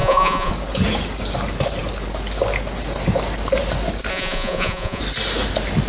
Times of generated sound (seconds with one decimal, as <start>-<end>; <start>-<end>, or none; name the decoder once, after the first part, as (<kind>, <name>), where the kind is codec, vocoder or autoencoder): 0.0-0.5 (vocoder, Vocos); 4.1-5.0